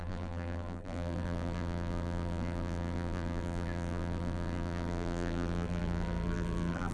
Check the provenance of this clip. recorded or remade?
remade